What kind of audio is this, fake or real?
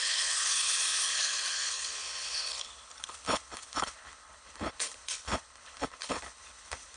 fake